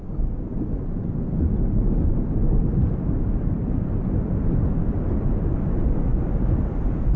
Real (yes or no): yes